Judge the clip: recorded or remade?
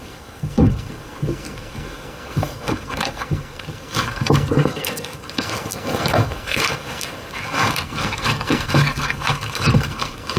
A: remade